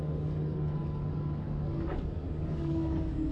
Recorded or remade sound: remade